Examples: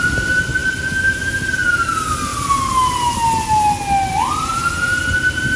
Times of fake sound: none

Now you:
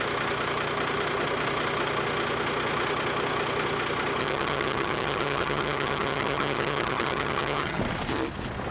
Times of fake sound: 4.2-7.8

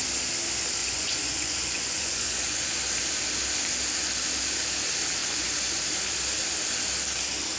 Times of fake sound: 0.8-2.7; 5.2-5.8

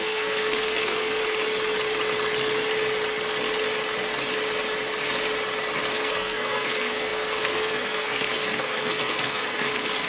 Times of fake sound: 0.0-1.2; 5.9-10.1

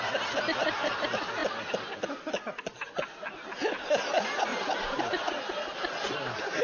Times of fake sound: 4.5-5.1

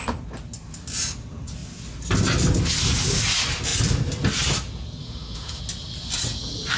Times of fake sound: 5.0-5.6

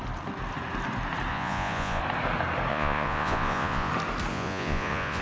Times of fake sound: 1.3-2.0; 2.7-3.9; 4.3-5.2